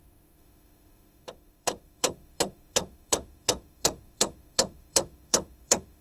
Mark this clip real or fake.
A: fake